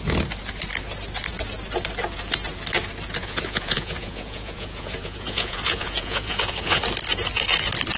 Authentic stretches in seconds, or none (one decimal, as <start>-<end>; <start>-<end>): 0.0-3.2; 6.8-8.0